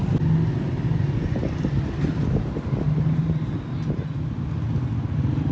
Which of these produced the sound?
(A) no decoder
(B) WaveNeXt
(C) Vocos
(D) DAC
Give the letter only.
A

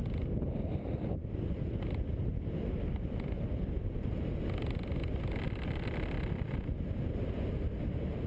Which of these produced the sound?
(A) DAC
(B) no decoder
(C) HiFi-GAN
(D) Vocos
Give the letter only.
B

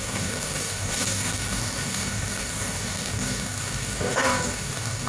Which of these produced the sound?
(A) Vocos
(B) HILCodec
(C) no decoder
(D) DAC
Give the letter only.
D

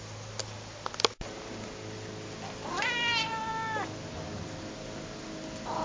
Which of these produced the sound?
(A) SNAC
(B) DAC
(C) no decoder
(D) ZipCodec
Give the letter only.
C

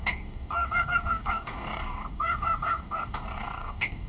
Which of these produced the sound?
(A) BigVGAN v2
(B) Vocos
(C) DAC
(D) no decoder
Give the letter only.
C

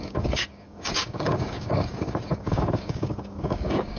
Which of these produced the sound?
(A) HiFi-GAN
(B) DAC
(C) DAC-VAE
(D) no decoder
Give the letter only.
B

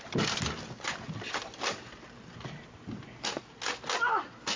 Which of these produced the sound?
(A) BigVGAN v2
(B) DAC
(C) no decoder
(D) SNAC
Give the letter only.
C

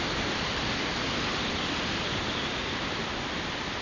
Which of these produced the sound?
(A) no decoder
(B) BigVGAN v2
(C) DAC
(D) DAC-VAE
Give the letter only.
A